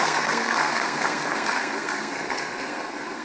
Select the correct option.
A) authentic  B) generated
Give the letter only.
B